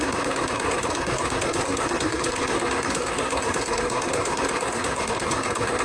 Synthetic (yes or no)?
yes